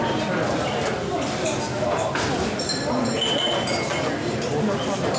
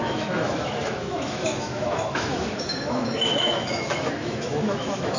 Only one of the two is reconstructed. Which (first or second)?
second